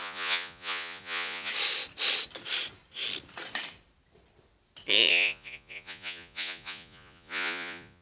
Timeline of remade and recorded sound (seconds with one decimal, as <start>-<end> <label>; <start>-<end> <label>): 0.0-1.5 remade; 1.5-5.1 recorded; 5.1-8.0 remade